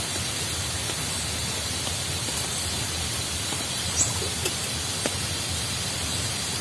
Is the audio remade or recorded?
recorded